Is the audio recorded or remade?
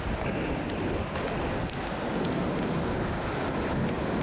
recorded